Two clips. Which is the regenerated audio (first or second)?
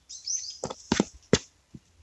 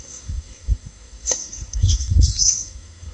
second